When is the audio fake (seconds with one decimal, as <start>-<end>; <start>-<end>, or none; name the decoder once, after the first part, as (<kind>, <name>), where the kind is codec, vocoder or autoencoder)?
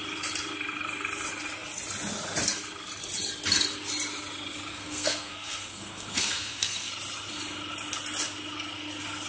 4.7-6.9 (codec, SNAC)